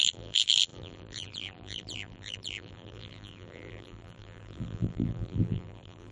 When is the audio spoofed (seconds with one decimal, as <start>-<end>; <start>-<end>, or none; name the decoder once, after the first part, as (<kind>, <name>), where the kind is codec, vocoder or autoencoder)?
0.0-6.1 (vocoder, BigVGAN v2)